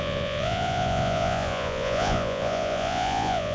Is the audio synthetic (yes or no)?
yes